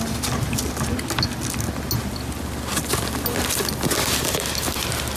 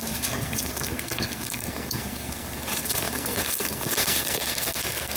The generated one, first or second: second